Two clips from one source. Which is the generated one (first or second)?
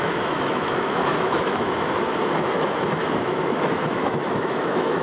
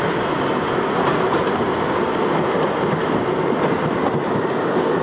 first